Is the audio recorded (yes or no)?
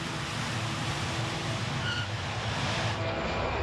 yes